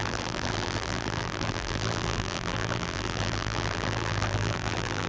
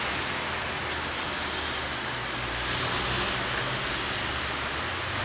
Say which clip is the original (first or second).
second